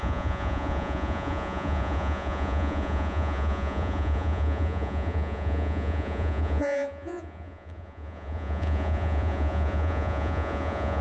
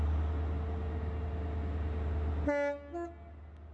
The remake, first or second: first